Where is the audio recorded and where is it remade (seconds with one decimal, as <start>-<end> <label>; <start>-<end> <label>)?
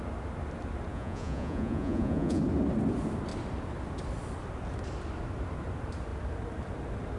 0.0-0.9 recorded; 0.9-2.4 remade; 2.4-7.2 recorded